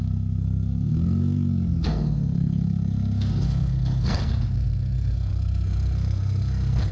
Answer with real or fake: fake